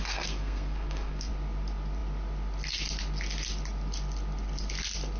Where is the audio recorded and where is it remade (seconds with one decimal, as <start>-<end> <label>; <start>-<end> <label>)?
0.0-1.3 remade; 1.3-5.2 recorded